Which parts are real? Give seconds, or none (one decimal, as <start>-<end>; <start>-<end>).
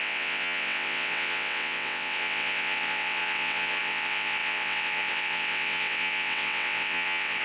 none